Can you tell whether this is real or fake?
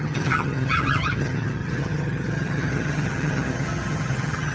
fake